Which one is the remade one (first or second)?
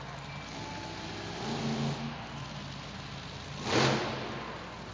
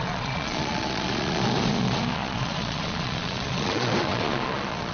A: second